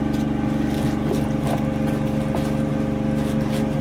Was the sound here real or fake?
real